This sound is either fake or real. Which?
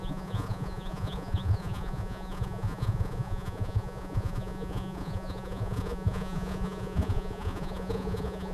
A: fake